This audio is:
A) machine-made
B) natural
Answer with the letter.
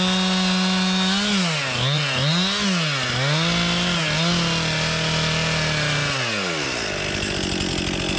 B